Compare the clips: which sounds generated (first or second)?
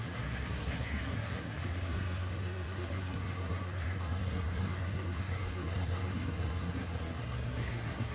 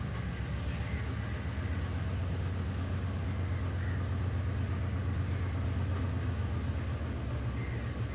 first